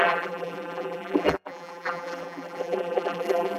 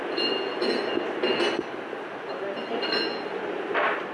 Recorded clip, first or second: second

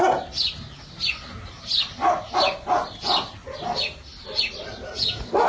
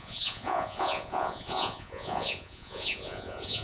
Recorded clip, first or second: first